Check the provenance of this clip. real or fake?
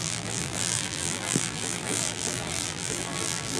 fake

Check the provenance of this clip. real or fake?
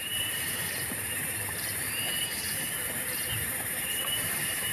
fake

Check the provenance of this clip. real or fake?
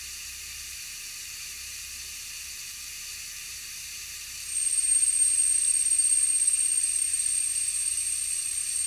fake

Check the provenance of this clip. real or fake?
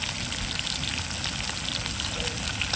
real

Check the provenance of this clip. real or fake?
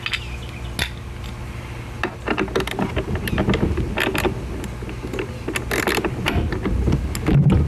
real